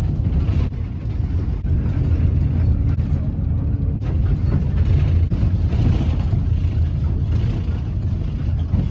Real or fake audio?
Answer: real